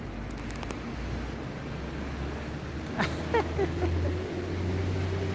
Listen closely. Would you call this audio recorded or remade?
recorded